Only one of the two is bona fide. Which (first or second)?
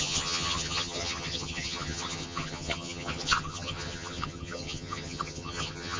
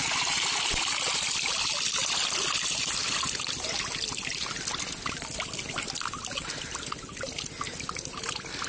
second